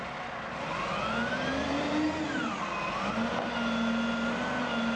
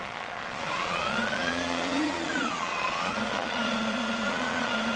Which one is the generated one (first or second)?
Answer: second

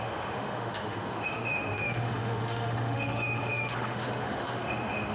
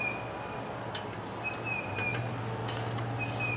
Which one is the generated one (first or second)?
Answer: first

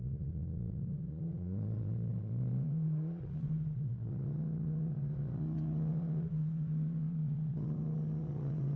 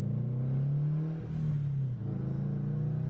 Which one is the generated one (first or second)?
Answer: first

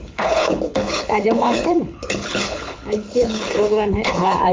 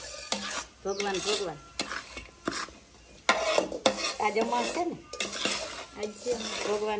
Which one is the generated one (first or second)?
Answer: first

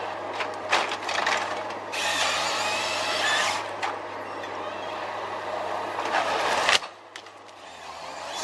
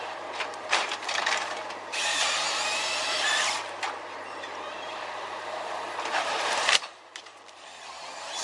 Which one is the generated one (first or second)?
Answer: second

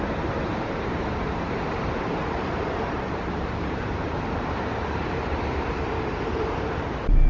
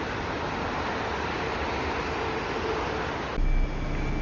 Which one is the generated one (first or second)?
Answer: first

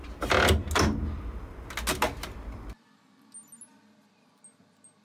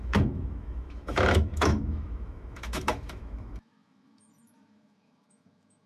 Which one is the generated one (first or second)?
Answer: second